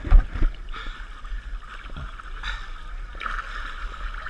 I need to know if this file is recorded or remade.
recorded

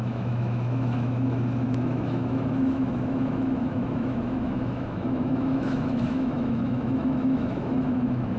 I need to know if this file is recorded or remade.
remade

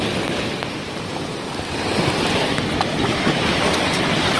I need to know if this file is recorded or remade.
remade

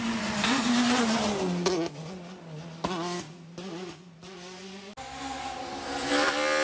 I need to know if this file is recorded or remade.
recorded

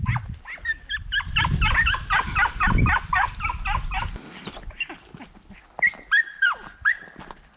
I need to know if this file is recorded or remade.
recorded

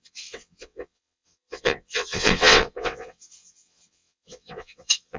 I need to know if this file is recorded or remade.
remade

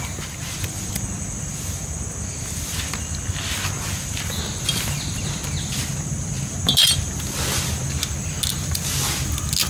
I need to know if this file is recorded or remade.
recorded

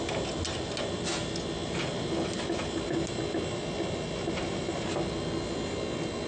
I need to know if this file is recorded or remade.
recorded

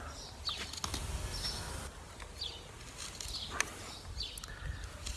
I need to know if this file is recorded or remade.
recorded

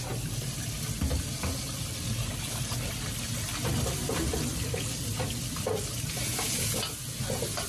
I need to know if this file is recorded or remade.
recorded